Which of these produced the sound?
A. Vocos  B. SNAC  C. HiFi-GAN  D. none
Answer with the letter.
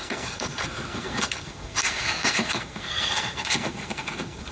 B